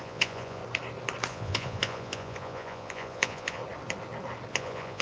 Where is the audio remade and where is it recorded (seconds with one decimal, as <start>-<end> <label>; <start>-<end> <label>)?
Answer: 0.0-0.6 remade; 0.6-1.3 recorded; 1.3-3.6 remade; 3.6-4.5 recorded; 4.5-5.0 remade